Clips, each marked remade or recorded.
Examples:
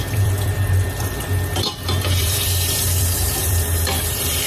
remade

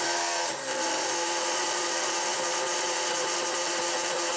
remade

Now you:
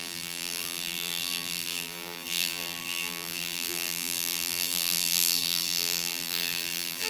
remade